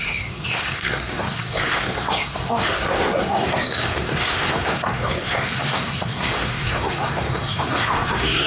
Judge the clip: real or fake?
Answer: fake